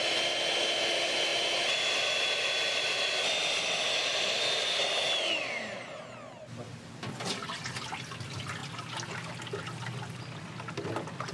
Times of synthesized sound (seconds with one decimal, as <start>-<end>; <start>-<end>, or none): none